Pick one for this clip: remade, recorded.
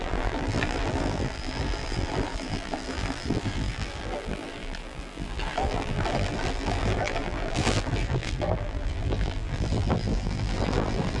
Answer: remade